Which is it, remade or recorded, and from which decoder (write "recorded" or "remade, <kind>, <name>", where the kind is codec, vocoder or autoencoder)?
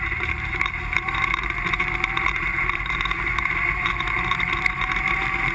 remade, vocoder, BigVGAN v2